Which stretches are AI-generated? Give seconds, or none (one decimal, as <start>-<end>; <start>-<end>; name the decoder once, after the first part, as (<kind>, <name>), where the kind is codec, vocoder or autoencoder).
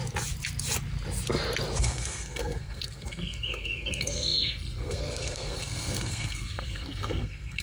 1.8-7.6 (codec, SNAC)